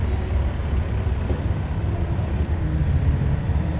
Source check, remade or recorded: recorded